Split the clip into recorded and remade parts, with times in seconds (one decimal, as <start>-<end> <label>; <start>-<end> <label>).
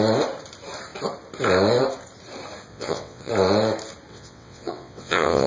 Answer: 0.0-2.7 recorded; 2.7-3.3 remade; 3.3-4.1 recorded; 4.1-5.5 remade